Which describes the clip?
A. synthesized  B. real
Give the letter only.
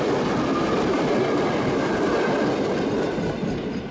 B